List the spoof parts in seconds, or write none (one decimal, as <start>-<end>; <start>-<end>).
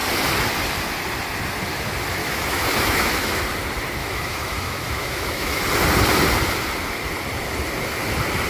2.2-3.4; 4.0-5.6